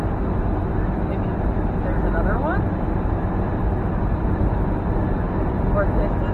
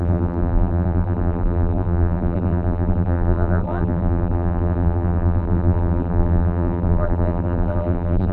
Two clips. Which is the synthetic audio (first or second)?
second